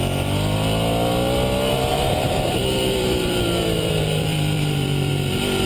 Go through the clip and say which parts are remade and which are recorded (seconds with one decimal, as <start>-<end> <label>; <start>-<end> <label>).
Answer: 0.0-1.7 recorded; 1.7-5.1 remade; 5.1-5.7 recorded